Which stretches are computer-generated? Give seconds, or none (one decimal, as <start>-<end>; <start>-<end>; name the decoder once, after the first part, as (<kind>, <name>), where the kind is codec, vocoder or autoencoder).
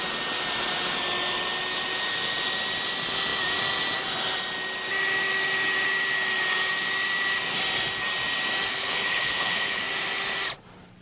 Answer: 8.7-9.8 (codec, HILCodec)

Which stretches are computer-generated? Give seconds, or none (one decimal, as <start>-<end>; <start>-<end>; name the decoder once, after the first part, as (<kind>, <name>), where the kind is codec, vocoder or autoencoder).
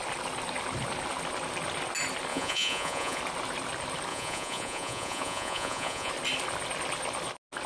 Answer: 2.3-3.2 (vocoder, Vocos); 4.1-6.1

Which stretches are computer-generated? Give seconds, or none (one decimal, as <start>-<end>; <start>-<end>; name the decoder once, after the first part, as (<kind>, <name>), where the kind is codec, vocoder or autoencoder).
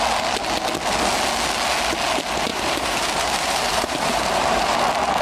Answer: 2.5-4.8 (vocoder, BigVGAN v2)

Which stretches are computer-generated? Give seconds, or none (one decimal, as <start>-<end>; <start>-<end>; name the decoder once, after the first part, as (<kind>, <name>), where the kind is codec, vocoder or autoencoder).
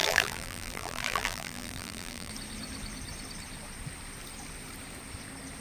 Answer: 0.0-2.3 (vocoder, BigVGAN v2)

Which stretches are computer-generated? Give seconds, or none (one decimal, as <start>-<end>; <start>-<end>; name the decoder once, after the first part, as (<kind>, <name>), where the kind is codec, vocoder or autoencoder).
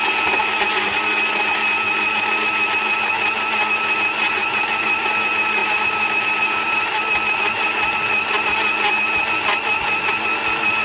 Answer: 5.6-7.1 (vocoder, BigVGAN v2)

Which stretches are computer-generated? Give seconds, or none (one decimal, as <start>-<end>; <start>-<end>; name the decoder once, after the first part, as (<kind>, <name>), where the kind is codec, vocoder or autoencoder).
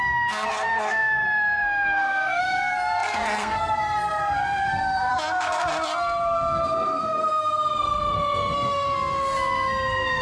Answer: 0.0-10.2 (codec, SNAC)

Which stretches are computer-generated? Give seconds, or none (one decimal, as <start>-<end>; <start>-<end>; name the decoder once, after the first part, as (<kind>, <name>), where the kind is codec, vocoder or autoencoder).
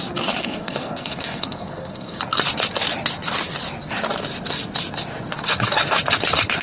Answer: 0.4-2.2 (codec, SNAC)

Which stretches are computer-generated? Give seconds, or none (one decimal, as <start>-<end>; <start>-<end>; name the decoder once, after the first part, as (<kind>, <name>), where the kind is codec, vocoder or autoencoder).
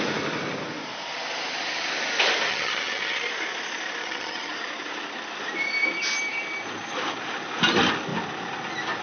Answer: 2.5-3.3 (vocoder, HiFi-GAN); 4.0-4.5